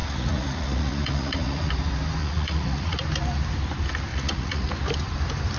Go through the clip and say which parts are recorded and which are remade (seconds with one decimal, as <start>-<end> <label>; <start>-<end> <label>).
0.0-1.7 remade; 1.7-2.2 recorded; 2.2-3.0 remade; 3.0-4.1 recorded; 4.1-4.7 remade; 4.7-5.6 recorded